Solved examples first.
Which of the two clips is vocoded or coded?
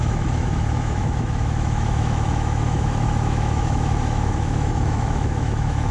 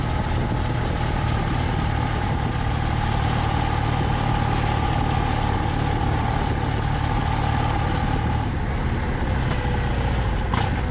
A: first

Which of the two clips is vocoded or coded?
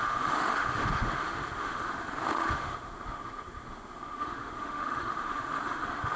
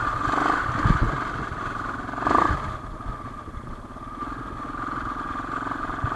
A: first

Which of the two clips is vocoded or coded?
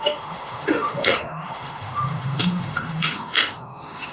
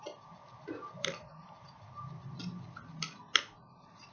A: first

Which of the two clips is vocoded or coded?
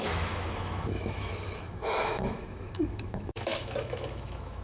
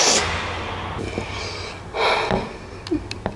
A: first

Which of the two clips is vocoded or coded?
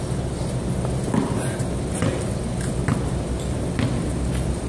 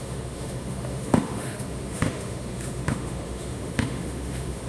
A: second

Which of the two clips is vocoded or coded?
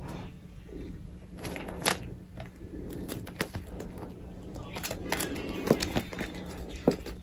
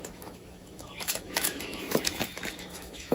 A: second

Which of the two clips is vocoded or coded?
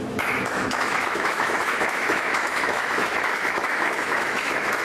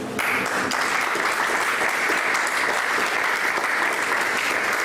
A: first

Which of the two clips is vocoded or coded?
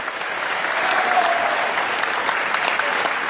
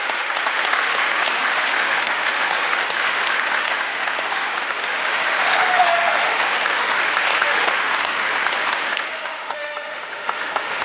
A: second